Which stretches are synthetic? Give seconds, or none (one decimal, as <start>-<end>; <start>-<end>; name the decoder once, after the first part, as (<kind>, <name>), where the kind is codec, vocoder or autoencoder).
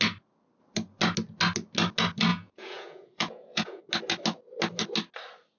2.3-3.8 (vocoder, Vocos)